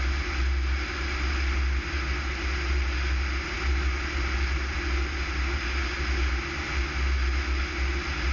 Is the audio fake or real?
real